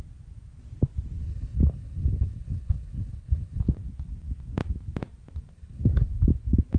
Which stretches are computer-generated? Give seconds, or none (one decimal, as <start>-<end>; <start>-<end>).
1.2-3.6; 5.5-6.1